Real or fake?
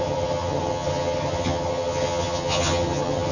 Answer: fake